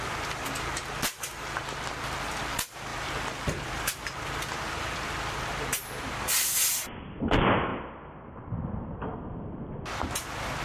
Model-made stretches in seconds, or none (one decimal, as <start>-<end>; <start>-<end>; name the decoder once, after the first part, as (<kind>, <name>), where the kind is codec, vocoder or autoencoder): 2.9-5.5 (vocoder, BigVGAN v2)